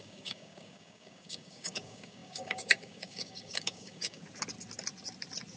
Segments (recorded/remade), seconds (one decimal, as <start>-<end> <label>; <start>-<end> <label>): 0.0-4.2 remade; 4.2-5.6 recorded